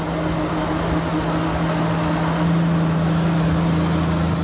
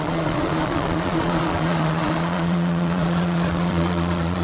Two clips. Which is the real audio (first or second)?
first